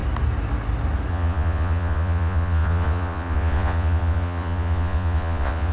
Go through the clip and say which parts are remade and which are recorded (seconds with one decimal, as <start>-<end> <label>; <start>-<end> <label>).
0.0-1.1 recorded; 1.1-5.7 remade